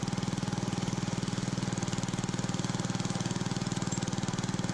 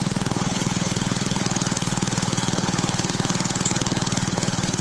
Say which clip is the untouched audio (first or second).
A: first